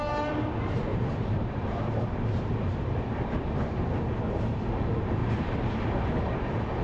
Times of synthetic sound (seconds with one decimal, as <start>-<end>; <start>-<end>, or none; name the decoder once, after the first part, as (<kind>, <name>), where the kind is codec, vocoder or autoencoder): 0.9-3.9 (vocoder, BigVGAN v2); 5.2-5.8